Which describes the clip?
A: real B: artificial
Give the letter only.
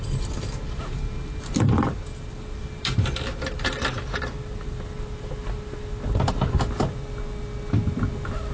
A